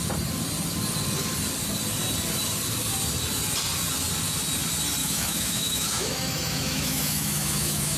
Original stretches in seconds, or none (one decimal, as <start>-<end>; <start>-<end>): 0.0-5.0